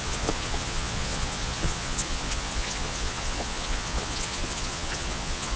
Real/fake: fake